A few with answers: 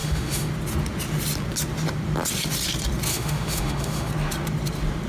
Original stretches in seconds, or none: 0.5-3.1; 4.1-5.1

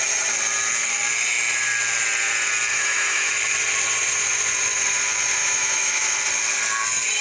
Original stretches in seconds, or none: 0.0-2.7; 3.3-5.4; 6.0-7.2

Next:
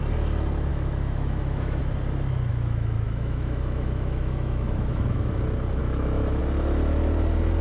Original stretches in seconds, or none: 0.0-0.7; 1.8-2.5; 5.3-5.8; 6.4-7.6

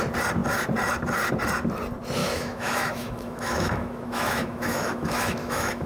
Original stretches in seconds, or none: 0.0-2.2